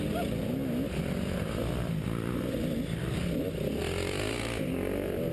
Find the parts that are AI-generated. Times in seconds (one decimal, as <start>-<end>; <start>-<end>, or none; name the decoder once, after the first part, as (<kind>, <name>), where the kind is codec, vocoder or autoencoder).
none